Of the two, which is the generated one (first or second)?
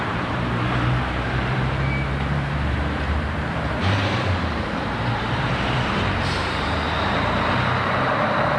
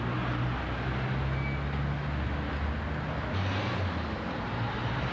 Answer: first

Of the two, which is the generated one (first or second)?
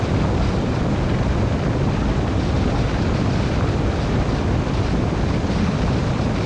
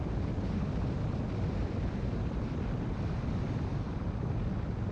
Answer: first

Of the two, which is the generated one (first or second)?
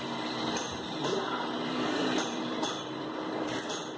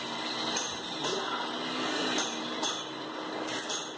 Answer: first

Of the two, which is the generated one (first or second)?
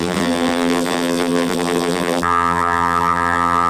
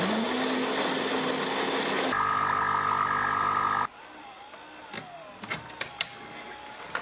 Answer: first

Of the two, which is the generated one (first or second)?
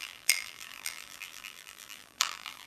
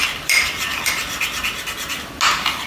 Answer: first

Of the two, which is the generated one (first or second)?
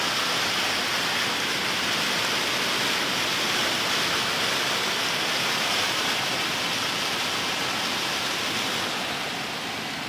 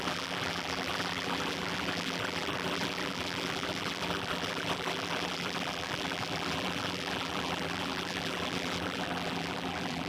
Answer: second